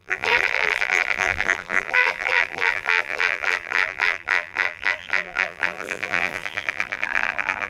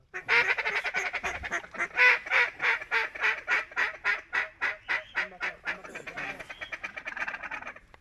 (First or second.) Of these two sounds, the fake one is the first